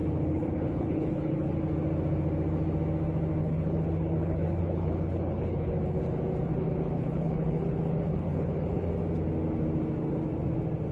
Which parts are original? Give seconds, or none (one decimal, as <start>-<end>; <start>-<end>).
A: 1.6-3.4; 6.0-6.5; 8.9-10.9